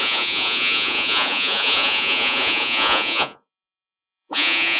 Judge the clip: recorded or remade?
remade